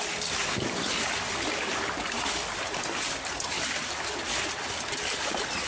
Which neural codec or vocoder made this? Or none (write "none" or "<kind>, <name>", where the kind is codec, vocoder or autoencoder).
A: none